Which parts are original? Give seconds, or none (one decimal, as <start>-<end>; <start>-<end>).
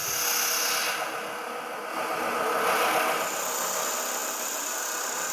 0.0-3.2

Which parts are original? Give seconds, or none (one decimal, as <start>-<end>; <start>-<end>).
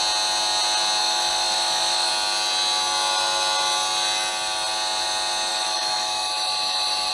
0.0-1.0; 2.1-5.5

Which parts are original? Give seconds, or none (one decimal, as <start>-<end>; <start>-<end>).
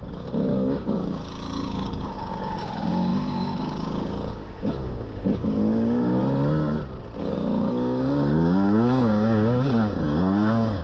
6.2-7.2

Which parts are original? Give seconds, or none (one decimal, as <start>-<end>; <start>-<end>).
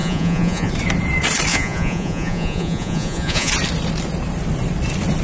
0.7-1.5; 3.5-5.2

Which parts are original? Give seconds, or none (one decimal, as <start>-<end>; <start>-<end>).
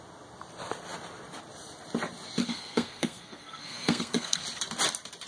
0.0-2.4; 4.4-5.3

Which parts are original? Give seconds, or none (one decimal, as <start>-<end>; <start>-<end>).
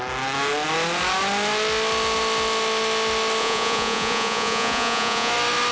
0.0-3.4; 5.3-5.7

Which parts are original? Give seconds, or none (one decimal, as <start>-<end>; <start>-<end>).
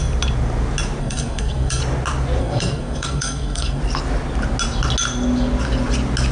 0.0-1.0; 1.8-2.4; 3.8-6.3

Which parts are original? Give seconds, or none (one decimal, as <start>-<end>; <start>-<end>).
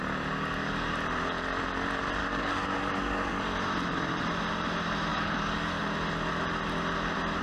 0.0-2.2; 3.4-5.1; 5.8-7.4